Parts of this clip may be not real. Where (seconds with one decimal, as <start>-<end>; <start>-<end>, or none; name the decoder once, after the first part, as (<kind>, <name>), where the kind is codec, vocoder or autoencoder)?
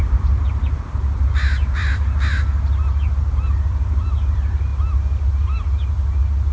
none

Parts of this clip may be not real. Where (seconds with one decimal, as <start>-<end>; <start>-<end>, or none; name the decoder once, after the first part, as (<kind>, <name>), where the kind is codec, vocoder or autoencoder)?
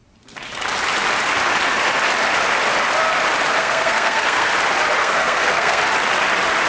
3.6-4.5 (codec, SNAC); 5.0-5.8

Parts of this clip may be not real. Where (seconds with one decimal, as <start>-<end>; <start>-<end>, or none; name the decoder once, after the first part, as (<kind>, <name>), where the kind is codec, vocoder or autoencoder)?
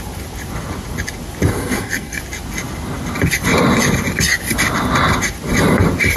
1.5-2.2 (codec, SNAC)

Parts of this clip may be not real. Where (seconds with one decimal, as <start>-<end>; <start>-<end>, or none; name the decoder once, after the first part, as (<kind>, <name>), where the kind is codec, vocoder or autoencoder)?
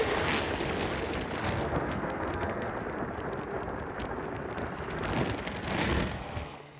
1.4-2.7 (codec, SNAC); 5.8-6.8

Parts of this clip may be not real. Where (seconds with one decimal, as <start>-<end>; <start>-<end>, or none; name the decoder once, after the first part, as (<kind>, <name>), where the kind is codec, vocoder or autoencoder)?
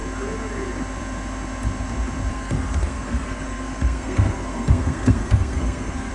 2.3-6.1 (codec, SNAC)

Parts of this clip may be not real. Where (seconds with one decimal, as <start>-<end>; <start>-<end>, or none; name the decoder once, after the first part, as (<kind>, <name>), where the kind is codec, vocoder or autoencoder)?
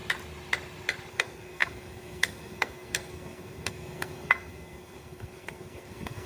1.1-6.3 (codec, SNAC)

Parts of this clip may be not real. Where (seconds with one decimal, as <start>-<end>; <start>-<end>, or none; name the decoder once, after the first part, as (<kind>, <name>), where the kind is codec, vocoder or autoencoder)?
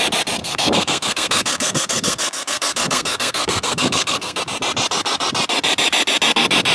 0.4-4.4 (codec, SNAC)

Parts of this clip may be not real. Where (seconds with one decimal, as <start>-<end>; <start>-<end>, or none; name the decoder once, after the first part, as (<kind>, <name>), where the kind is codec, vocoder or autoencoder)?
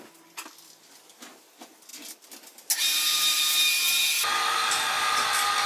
none